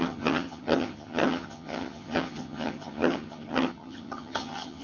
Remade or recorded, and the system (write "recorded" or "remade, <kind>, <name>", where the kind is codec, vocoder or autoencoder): remade, vocoder, HiFi-GAN